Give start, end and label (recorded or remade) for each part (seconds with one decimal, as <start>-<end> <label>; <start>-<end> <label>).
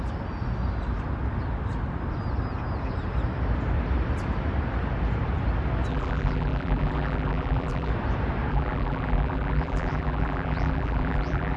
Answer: 0.0-5.9 recorded; 5.9-7.9 remade; 7.9-8.5 recorded; 8.5-11.6 remade